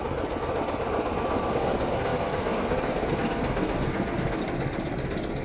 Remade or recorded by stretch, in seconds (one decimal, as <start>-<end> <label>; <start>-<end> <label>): 0.0-1.5 recorded; 1.5-4.4 remade; 4.4-5.4 recorded